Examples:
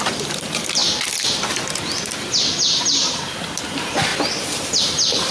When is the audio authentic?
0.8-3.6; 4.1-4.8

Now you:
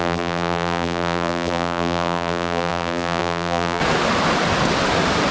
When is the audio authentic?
3.8-5.3

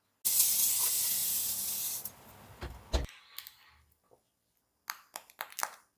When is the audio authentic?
0.0-6.0

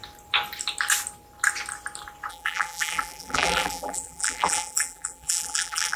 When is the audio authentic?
0.0-2.3

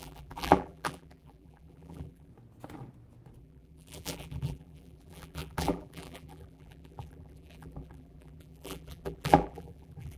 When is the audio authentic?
2.3-3.4

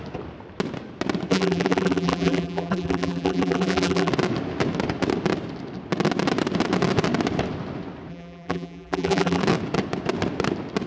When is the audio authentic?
0.0-1.3; 4.1-8.1; 9.4-10.9

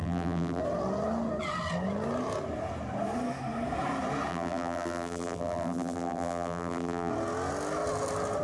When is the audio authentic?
0.6-4.3; 7.1-8.4

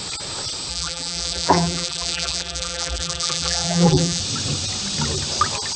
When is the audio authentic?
0.0-0.7; 4.2-5.8